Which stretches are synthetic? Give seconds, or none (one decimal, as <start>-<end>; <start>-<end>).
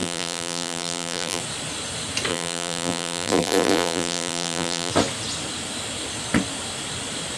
0.0-1.4; 2.3-4.9